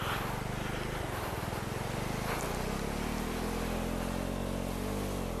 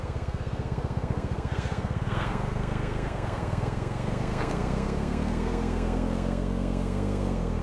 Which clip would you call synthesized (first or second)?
second